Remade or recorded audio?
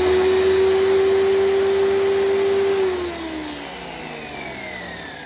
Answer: recorded